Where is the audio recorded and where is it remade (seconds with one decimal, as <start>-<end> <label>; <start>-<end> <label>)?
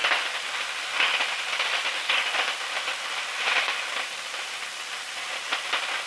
0.0-6.1 recorded